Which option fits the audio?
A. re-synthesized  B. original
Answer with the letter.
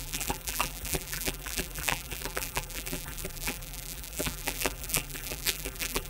A